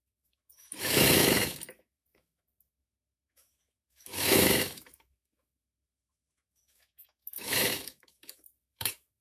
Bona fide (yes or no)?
no